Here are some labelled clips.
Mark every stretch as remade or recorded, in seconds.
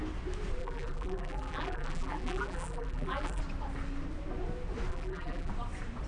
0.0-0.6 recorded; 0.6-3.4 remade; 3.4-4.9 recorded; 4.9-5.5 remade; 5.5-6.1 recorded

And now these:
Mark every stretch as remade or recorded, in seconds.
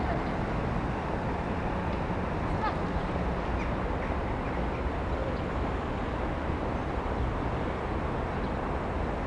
0.0-9.3 recorded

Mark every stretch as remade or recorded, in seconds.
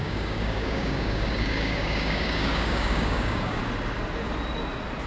0.0-3.6 remade; 3.6-5.1 recorded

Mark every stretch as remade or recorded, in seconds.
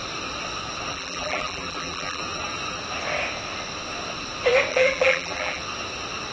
0.0-0.9 recorded; 0.9-2.2 remade; 2.2-4.7 recorded; 4.7-5.6 remade; 5.6-6.3 recorded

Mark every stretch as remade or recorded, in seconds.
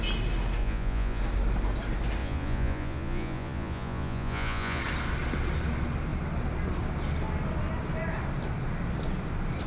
0.0-0.6 recorded; 0.6-1.2 remade; 1.2-2.2 recorded; 2.2-4.8 remade; 4.8-9.7 recorded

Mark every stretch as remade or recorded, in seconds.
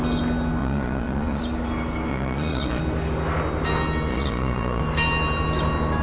0.0-0.6 recorded; 0.6-1.4 remade; 1.4-2.1 recorded; 2.1-2.8 remade; 2.8-4.1 recorded; 4.1-4.8 remade; 4.8-6.0 recorded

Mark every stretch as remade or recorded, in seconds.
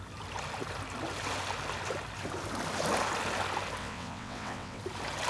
0.0-3.8 recorded; 3.8-4.8 remade; 4.8-5.3 recorded